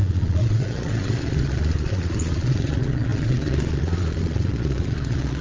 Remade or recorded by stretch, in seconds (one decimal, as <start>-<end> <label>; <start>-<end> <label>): 0.0-5.4 remade